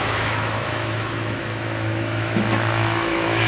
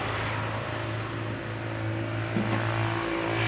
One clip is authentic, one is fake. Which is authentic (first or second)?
second